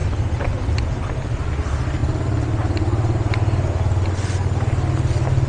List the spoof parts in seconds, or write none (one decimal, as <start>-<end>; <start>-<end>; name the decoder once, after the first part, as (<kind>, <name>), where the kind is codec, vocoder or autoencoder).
none